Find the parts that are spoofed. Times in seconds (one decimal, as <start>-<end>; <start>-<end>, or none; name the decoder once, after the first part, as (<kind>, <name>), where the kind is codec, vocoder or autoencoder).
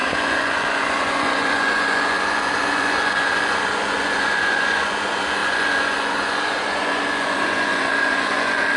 0.0-8.8 (vocoder, Vocos)